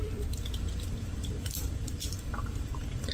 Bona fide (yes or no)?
no